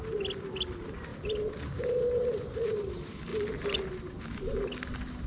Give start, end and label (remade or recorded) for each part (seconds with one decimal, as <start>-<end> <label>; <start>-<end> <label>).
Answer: 0.0-5.3 recorded